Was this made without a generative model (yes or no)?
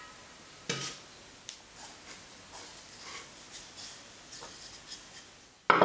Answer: yes